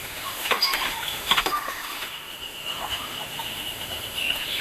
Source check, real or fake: fake